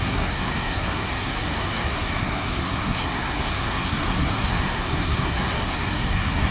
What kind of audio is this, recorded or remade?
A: remade